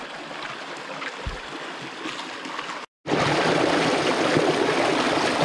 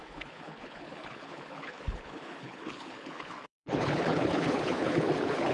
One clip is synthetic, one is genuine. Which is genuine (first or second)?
first